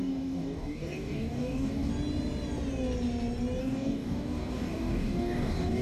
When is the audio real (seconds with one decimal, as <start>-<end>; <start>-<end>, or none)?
1.9-3.6